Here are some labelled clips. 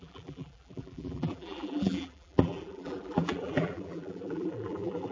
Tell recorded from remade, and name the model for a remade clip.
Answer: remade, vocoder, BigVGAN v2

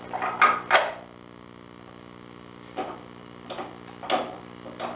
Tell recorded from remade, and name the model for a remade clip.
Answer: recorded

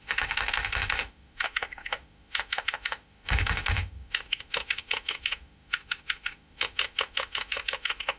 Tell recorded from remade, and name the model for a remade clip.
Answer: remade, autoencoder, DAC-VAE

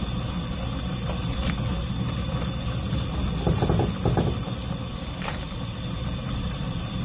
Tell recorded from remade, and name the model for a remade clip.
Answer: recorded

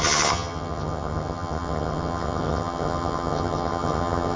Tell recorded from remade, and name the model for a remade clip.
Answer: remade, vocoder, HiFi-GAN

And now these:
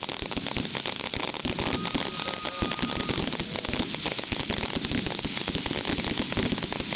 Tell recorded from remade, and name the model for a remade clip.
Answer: recorded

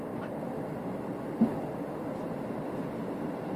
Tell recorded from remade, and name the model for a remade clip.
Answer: recorded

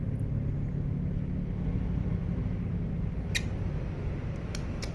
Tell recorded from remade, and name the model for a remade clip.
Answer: recorded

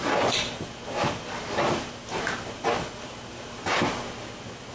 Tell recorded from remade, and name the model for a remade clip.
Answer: recorded